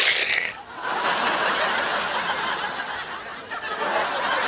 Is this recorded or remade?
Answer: recorded